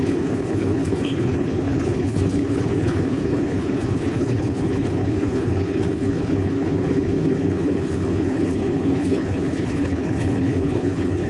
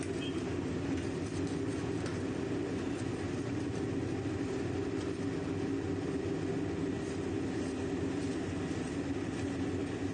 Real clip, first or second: second